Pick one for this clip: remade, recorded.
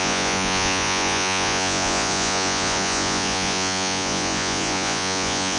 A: remade